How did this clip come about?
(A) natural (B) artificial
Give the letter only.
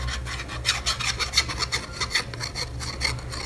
A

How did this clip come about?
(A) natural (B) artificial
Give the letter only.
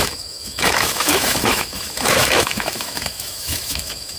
B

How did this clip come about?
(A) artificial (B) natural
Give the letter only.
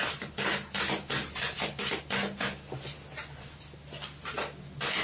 B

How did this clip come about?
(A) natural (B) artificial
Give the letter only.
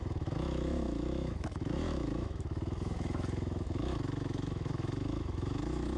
B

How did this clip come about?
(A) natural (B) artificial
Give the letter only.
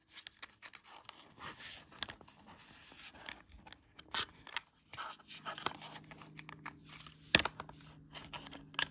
A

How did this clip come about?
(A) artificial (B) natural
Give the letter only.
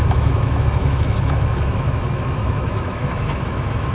A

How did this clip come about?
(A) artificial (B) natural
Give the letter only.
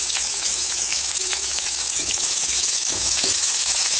A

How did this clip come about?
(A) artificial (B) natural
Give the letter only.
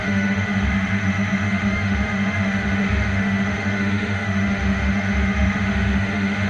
A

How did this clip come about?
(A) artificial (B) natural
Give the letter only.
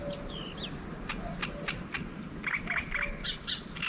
B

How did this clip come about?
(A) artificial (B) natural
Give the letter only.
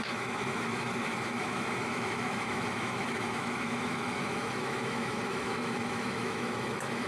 A